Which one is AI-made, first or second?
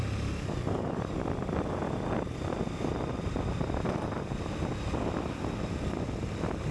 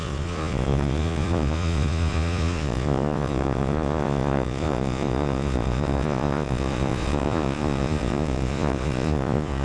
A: second